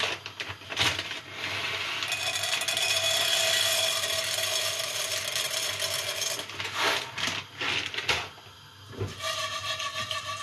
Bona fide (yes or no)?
yes